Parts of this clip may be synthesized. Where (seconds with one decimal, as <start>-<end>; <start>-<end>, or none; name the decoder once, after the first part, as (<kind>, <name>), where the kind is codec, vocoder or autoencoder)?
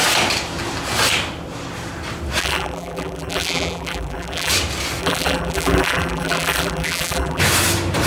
2.4-4.5 (vocoder, BigVGAN v2); 5.0-7.4